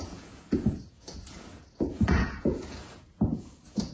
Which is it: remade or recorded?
remade